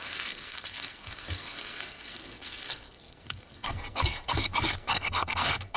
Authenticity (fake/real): fake